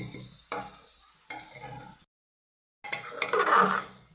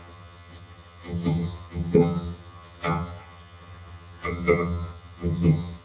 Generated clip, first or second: second